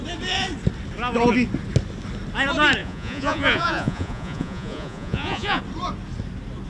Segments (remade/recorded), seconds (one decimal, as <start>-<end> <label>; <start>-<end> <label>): 0.0-2.8 recorded; 2.8-5.6 remade; 5.6-6.7 recorded